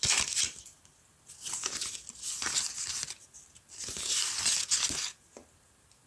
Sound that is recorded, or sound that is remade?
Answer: recorded